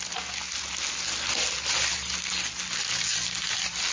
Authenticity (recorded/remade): recorded